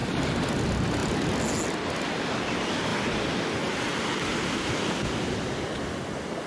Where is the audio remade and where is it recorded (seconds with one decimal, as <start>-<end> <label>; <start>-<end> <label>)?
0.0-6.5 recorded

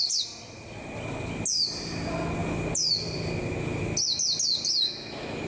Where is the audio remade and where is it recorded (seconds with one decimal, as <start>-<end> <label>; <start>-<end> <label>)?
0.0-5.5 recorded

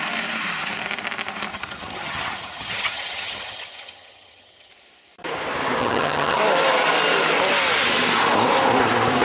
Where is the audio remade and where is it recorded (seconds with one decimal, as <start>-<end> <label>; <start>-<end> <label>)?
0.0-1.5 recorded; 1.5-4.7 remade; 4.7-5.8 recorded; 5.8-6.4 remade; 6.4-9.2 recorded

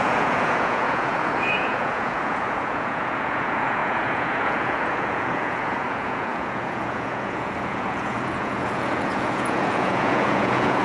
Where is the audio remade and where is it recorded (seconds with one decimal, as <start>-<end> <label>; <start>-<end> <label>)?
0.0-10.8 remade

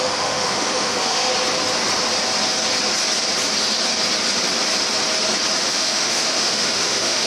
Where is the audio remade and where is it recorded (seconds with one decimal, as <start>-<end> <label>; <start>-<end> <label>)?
0.0-1.3 remade; 1.3-5.7 recorded; 5.7-7.3 remade

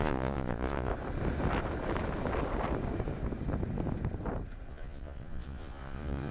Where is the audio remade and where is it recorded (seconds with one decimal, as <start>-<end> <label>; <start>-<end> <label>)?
0.0-0.9 remade; 0.9-4.7 recorded; 4.7-6.3 remade

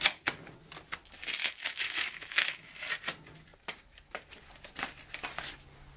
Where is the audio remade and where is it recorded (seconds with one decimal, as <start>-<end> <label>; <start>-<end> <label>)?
0.0-1.4 recorded; 1.4-2.7 remade; 2.7-6.0 recorded